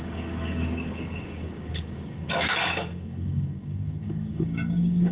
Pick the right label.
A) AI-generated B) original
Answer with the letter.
A